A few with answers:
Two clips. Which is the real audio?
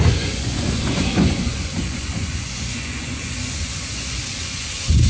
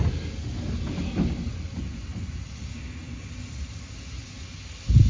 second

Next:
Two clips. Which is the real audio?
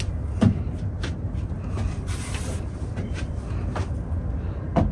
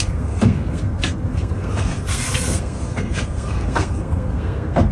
first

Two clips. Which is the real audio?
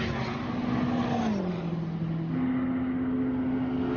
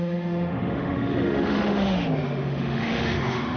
first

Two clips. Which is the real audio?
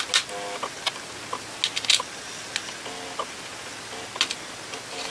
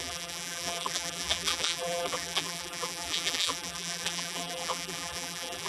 first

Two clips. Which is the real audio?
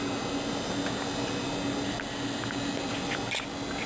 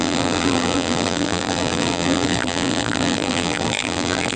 first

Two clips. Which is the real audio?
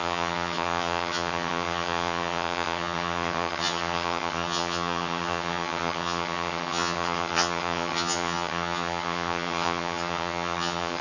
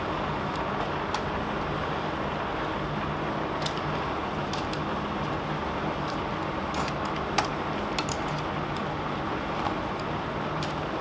second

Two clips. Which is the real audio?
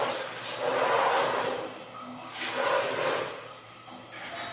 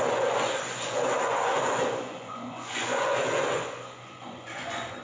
first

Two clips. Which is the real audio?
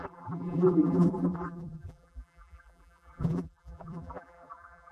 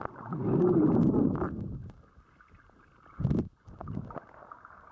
second